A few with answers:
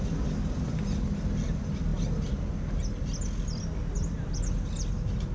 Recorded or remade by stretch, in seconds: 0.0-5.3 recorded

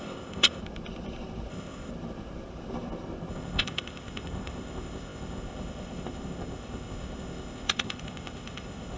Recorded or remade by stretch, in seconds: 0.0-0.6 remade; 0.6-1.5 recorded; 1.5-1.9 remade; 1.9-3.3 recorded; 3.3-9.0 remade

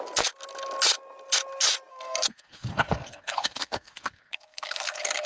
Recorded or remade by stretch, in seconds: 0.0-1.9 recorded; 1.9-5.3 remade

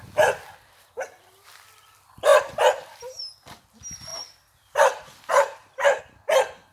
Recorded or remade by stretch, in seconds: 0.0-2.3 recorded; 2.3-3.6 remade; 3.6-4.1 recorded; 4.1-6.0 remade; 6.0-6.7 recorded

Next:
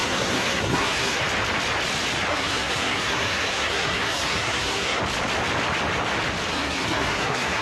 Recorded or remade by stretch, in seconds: 0.0-1.2 remade; 1.2-2.3 recorded; 2.3-5.0 remade; 5.0-6.5 recorded; 6.5-7.6 remade